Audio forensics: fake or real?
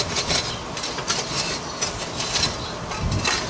real